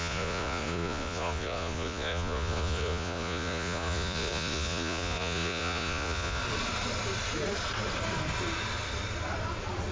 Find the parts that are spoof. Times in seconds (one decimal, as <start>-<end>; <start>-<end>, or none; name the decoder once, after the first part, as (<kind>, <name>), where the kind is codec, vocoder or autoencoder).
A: 0.0-6.4 (vocoder, Vocos)